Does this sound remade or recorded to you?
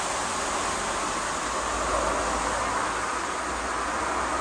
recorded